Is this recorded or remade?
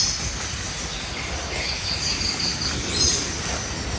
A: recorded